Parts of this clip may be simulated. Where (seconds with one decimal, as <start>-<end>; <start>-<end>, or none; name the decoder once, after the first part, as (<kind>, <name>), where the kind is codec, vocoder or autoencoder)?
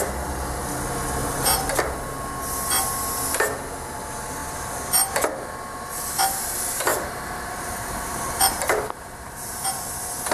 1.2-2.3 (vocoder, BigVGAN v2); 6.9-9.9